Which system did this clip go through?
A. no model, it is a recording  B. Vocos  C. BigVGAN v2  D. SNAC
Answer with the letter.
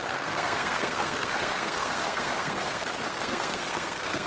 D